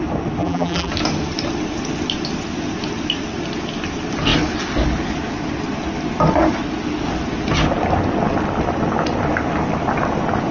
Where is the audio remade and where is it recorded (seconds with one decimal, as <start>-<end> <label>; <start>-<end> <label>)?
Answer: 0.0-0.4 recorded; 0.4-0.9 remade; 0.9-10.5 recorded